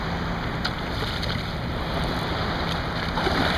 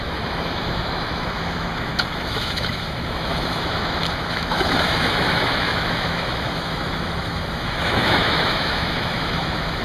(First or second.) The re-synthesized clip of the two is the second